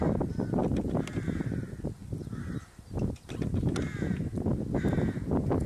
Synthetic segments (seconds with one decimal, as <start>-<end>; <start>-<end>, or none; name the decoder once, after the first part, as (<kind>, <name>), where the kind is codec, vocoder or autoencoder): none